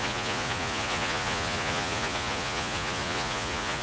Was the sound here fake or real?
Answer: fake